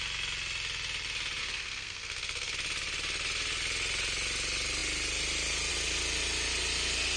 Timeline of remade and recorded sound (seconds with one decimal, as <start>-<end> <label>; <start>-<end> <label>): 0.0-1.4 recorded; 1.4-2.5 remade; 2.5-7.2 recorded

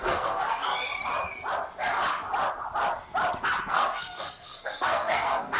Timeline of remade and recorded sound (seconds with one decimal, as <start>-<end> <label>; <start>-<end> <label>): 0.0-1.1 remade; 1.1-3.7 recorded; 3.7-5.6 remade